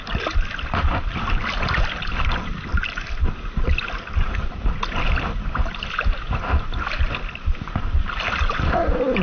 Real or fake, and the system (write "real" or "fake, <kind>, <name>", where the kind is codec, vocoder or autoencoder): real